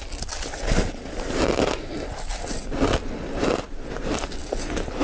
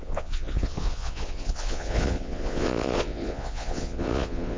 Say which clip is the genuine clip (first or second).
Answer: first